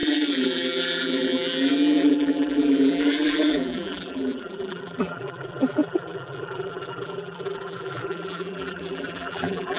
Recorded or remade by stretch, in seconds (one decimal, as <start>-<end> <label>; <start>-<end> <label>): 0.0-9.8 remade